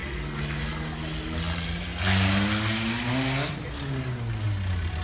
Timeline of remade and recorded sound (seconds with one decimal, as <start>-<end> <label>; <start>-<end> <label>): 0.0-5.0 recorded